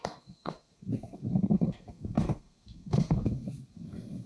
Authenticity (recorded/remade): remade